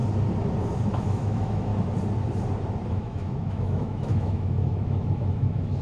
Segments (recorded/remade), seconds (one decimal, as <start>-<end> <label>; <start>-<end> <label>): 0.0-0.9 recorded; 0.9-1.7 remade; 1.7-2.9 recorded; 2.9-5.8 remade